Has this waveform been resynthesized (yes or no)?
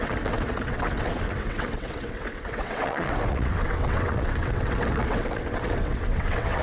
yes